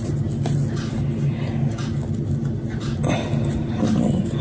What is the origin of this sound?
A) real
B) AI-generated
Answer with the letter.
A